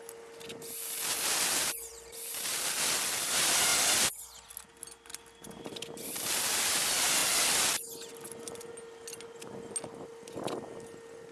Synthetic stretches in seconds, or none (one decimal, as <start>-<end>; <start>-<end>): 1.9-2.5